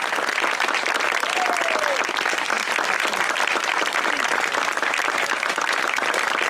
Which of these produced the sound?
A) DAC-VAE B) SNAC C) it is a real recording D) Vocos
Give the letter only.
C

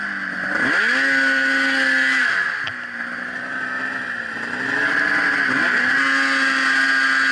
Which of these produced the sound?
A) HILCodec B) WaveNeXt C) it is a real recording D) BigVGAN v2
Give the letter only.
C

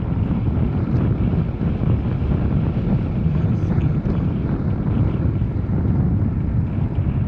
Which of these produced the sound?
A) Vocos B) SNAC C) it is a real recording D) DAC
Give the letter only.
C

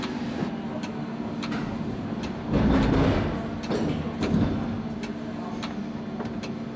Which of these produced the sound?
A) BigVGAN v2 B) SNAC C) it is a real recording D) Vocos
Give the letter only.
C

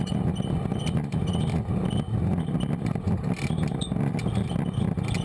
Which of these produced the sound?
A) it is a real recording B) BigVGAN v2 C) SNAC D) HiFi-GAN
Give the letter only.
A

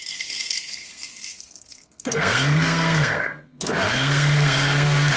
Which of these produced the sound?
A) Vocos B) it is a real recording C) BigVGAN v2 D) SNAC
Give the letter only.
D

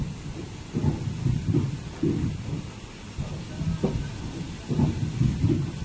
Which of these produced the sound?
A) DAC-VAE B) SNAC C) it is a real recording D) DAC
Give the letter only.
C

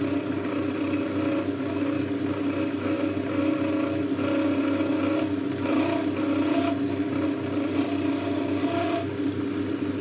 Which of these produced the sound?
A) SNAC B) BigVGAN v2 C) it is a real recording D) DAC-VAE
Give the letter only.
C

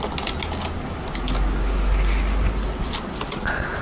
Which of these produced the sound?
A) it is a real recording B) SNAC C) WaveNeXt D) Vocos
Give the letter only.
A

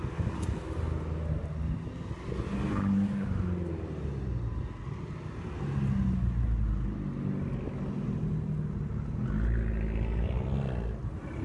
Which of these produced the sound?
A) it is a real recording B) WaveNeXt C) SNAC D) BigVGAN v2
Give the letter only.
A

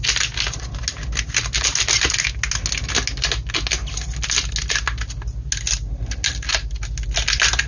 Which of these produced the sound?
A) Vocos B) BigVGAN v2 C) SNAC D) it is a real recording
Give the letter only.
D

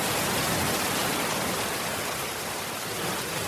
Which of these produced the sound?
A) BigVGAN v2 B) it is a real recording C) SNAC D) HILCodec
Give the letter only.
B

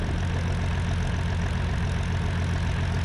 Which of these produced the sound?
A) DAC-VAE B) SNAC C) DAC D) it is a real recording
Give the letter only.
D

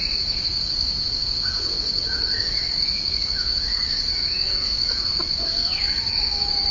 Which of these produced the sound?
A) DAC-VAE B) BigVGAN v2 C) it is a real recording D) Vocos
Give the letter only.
A